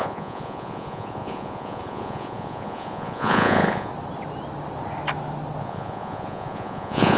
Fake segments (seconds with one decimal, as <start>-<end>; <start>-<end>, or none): 0.0-3.9; 5.6-7.2

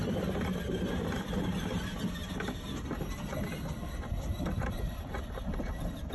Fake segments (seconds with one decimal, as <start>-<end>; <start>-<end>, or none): none

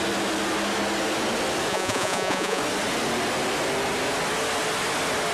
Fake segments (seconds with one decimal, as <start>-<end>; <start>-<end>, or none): 1.7-2.6

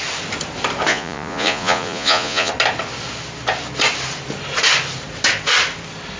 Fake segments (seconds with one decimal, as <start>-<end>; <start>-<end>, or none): 0.9-2.5

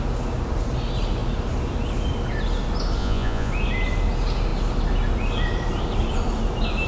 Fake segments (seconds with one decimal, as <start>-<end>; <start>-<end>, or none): 3.0-3.5